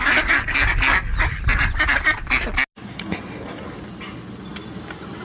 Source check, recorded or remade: recorded